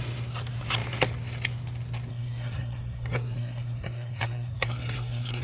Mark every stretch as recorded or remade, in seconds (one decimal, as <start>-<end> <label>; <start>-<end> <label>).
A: 0.0-2.1 recorded; 2.1-5.4 remade